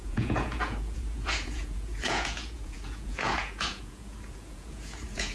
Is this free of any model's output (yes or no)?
no